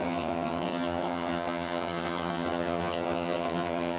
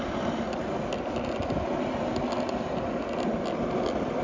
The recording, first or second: second